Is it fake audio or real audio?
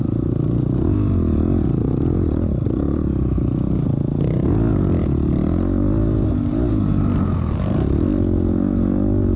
real